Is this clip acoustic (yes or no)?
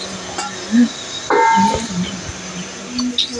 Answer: yes